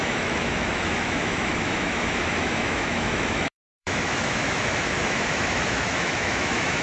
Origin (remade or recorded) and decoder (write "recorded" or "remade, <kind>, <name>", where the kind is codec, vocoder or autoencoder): remade, autoencoder, DAC-VAE